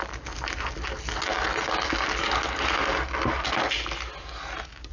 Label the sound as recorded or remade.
recorded